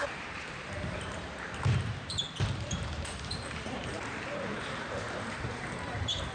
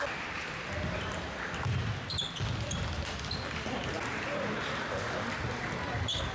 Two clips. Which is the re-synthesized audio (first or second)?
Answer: first